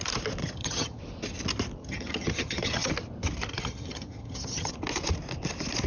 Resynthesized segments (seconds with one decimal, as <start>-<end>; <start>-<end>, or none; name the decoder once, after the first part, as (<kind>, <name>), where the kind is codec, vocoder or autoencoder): 0.4-1.0 (vocoder, HiFi-GAN); 1.8-2.9; 3.5-4.7